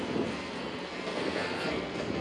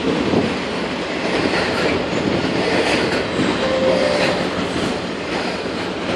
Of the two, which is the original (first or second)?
second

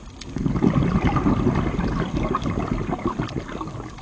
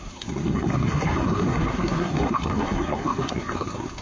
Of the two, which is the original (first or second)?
first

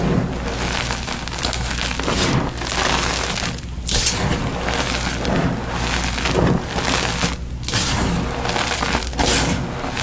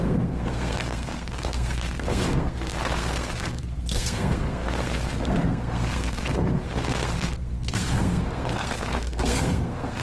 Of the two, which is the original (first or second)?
first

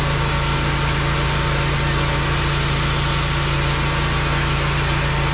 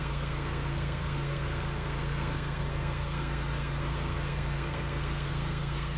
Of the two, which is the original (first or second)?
first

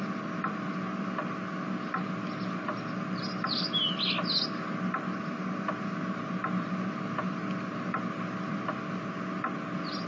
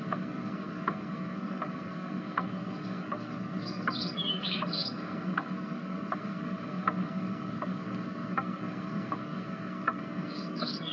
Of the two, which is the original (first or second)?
first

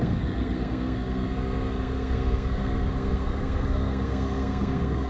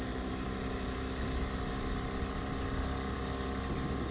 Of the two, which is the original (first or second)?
second